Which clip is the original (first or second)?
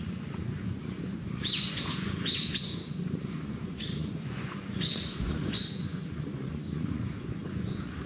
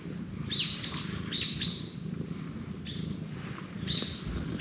second